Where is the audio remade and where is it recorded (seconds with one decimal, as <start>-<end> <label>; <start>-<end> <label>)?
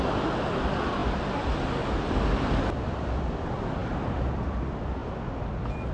0.0-5.9 recorded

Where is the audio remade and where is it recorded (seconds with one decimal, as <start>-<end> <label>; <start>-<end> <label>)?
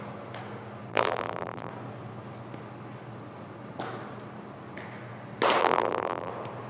0.0-0.9 recorded; 0.9-1.7 remade; 1.7-5.6 recorded; 5.6-6.3 remade; 6.3-6.7 recorded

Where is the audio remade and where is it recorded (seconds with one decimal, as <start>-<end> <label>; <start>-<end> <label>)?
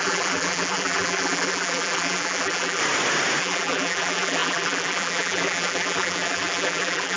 0.0-2.8 remade; 2.8-3.4 recorded; 3.4-7.2 remade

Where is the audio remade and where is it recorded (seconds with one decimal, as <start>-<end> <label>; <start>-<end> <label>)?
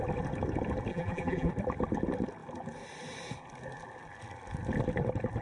0.0-0.9 recorded; 0.9-1.5 remade; 1.5-5.4 recorded